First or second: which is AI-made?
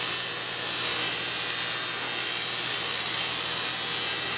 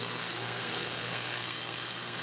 second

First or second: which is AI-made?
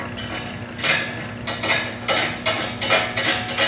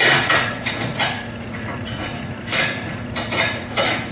second